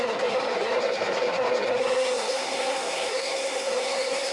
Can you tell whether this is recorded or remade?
remade